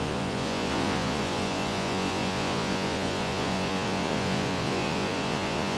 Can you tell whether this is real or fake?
fake